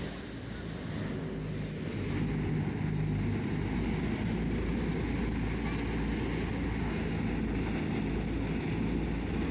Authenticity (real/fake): real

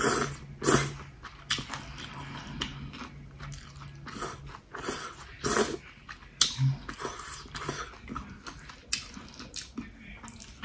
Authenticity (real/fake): real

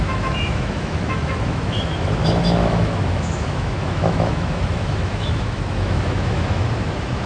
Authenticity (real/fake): fake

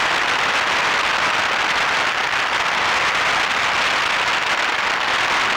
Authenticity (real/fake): real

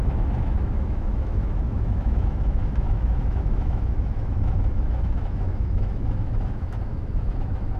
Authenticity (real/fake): fake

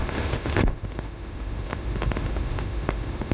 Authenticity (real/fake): fake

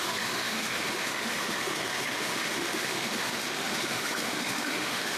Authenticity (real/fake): fake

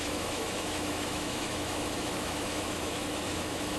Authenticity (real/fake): fake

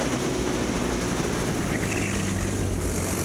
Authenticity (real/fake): real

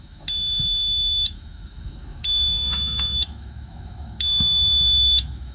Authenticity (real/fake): fake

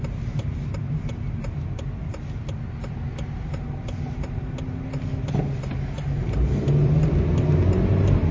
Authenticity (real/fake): real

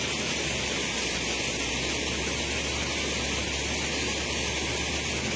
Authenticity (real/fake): real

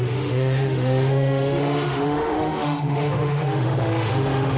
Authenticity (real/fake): fake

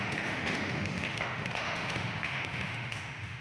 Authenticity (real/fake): fake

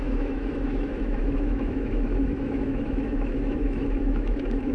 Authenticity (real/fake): fake